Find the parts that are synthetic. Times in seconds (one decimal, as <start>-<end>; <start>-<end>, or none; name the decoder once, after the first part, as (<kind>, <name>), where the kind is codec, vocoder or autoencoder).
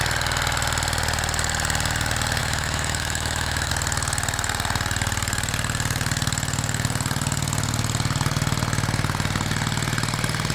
2.4-3.7 (autoencoder, DAC-VAE)